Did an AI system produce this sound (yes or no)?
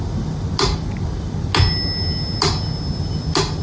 no